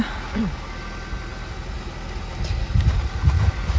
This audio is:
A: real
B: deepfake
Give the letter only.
A